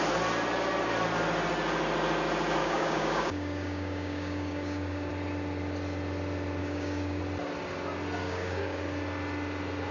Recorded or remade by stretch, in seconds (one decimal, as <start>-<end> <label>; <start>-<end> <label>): 0.0-2.6 recorded; 2.6-5.1 remade; 5.1-6.6 recorded; 6.6-7.2 remade; 7.2-8.2 recorded; 8.2-8.8 remade; 8.8-9.9 recorded